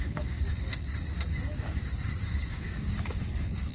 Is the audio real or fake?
fake